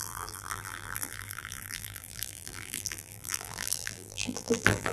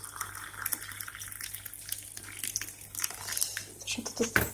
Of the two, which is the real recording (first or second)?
second